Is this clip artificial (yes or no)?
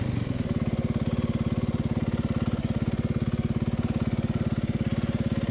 no